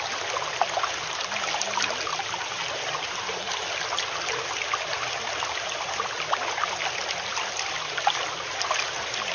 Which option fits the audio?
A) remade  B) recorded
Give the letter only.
B